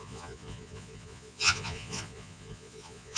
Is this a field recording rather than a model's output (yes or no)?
no